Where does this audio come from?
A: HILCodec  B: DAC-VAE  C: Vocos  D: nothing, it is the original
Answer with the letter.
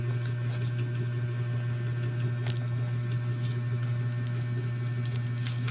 D